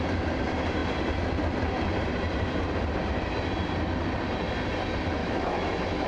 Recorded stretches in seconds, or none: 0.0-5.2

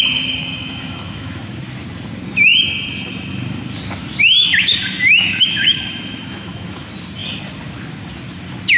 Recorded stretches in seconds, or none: 0.0-0.4; 1.4-4.4; 6.8-8.8